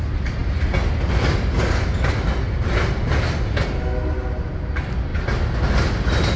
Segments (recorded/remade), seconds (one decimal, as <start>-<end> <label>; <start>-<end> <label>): 0.0-6.4 recorded